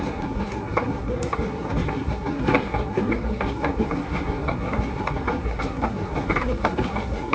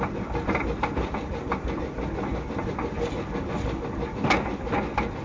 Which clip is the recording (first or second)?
second